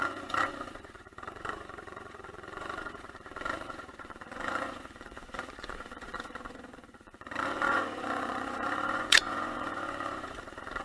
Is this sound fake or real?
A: fake